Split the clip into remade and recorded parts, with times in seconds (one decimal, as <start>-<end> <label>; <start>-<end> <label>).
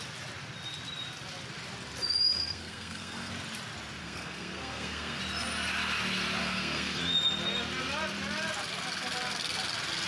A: 0.0-2.4 recorded; 2.4-3.3 remade; 3.3-4.0 recorded; 4.0-5.2 remade; 5.2-6.4 recorded; 6.4-7.0 remade; 7.0-10.1 recorded